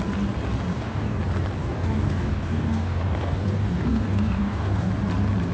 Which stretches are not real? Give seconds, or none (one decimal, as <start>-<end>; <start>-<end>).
0.7-1.2; 1.6-4.9